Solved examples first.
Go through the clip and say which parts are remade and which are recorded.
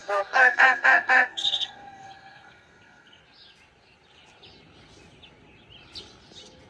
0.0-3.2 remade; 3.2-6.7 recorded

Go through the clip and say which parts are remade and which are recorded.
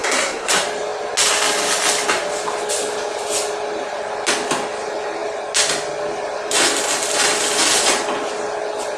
0.0-0.5 remade; 0.5-9.0 recorded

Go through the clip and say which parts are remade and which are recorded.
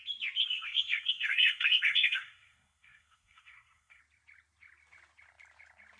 0.0-0.4 recorded; 0.4-4.0 remade; 4.0-6.0 recorded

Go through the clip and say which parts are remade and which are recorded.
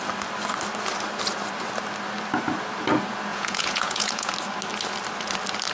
0.0-3.3 recorded; 3.3-4.3 remade; 4.3-5.7 recorded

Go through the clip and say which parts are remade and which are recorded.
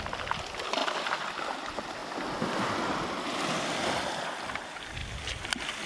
0.0-5.9 recorded